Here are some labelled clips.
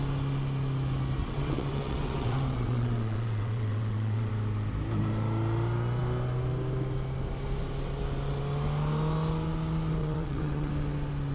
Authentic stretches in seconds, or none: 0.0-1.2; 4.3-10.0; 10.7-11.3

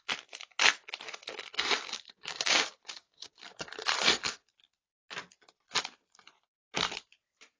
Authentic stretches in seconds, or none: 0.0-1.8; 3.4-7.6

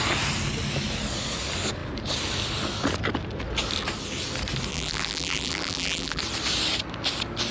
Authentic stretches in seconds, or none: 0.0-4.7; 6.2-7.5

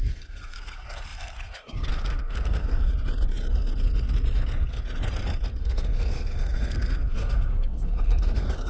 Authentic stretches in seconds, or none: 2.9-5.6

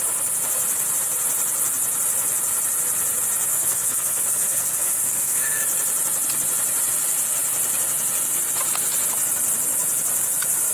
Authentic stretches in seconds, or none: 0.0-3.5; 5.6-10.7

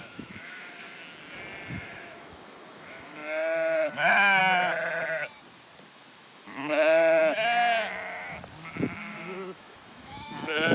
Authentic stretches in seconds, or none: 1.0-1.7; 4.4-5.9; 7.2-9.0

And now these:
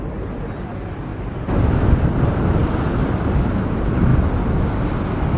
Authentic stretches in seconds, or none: 0.0-1.1; 1.6-2.6; 3.5-5.4